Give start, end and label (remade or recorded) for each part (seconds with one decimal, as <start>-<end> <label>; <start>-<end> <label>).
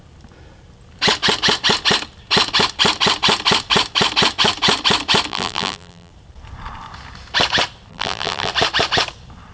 0.0-5.3 recorded; 5.3-6.1 remade; 6.1-7.9 recorded; 7.9-8.5 remade; 8.5-9.5 recorded